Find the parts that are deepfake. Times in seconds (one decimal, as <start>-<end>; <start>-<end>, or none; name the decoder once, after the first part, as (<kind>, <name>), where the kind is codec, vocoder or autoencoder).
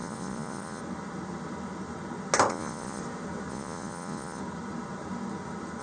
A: 0.0-0.8 (vocoder, Vocos); 2.5-3.0; 3.5-4.4